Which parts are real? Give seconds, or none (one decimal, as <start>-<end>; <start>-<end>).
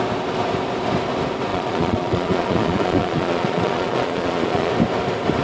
0.0-1.5; 4.7-5.4